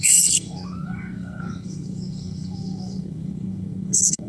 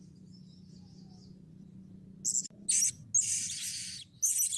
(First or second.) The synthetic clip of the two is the first